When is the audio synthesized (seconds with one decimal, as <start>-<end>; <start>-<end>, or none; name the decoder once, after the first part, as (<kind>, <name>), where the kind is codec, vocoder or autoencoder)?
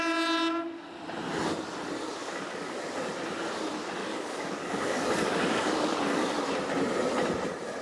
2.2-2.8 (codec, DAC); 4.0-6.5